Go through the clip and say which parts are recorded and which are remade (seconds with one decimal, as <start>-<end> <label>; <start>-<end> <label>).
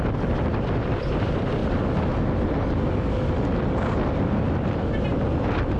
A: 0.0-5.8 recorded